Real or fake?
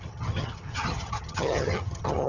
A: fake